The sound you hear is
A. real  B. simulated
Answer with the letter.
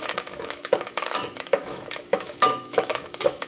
B